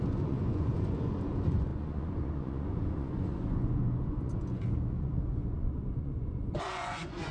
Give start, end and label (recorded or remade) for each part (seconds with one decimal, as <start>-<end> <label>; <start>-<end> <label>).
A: 0.0-7.3 remade